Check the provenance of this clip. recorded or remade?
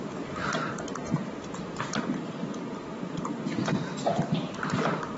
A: remade